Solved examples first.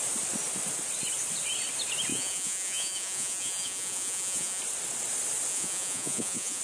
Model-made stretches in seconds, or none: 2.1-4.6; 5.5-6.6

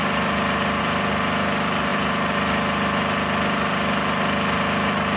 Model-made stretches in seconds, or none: none

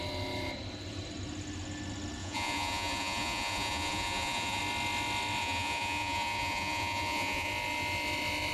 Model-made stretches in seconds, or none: 2.2-4.6; 5.4-7.5

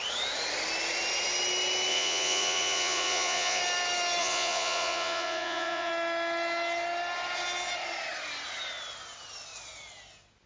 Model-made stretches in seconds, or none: 1.9-3.6; 4.2-5.9

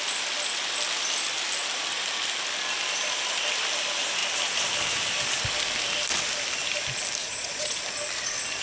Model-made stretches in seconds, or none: 7.2-7.8